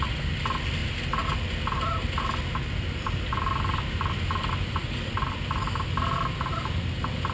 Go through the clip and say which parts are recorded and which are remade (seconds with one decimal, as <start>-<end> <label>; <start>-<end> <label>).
0.0-7.3 recorded